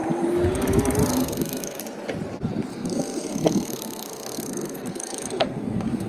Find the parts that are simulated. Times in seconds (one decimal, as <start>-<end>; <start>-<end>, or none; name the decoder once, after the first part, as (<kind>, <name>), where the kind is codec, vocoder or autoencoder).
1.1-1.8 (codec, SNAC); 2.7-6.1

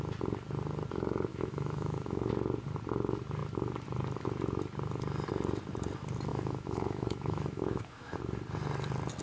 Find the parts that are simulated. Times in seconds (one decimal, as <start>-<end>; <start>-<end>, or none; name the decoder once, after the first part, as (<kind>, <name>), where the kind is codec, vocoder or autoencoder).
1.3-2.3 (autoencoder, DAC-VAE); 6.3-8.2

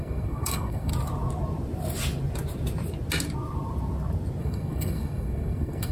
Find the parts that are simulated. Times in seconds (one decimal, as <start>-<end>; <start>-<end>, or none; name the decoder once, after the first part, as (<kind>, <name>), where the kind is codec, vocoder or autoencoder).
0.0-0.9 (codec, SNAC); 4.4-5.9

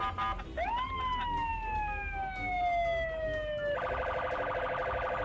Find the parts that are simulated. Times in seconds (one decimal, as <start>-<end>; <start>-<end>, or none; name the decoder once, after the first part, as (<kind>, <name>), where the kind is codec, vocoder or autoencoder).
none